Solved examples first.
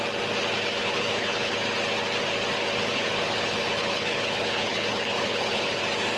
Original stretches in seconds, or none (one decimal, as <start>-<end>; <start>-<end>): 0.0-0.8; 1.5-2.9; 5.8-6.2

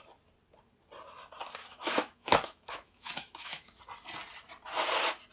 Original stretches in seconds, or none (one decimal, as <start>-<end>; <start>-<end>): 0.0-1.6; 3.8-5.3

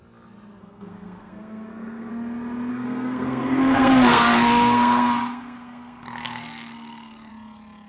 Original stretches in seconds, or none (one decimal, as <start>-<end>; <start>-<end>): 0.0-0.6; 2.1-2.7; 7.3-7.9